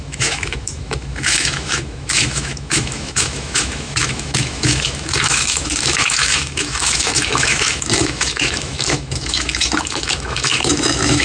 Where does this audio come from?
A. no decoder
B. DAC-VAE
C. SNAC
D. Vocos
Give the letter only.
B